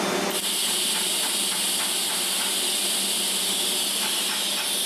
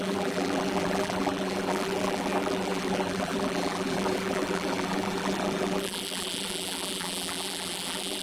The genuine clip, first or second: first